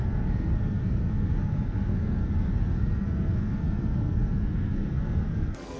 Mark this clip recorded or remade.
remade